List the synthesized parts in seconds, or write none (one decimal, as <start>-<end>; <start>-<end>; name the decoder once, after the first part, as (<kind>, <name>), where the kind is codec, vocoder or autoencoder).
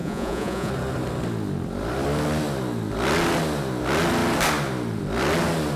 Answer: 0.0-0.7 (vocoder, Vocos)